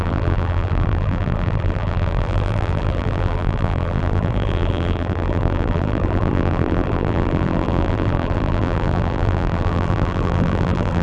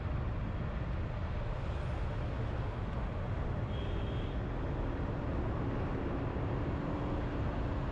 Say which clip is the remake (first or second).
first